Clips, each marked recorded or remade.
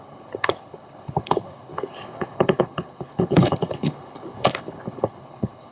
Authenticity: remade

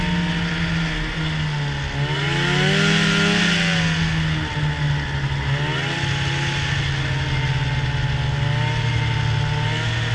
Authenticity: recorded